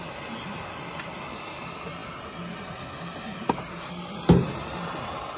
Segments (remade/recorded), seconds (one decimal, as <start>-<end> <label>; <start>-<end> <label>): 0.0-5.4 recorded